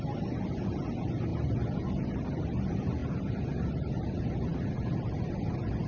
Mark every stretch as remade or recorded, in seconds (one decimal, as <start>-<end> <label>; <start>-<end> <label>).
0.0-5.9 recorded